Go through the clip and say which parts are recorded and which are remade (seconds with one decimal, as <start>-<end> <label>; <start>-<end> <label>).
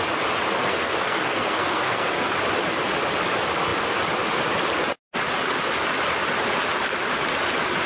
0.0-0.6 recorded; 0.6-2.3 remade; 2.3-7.9 recorded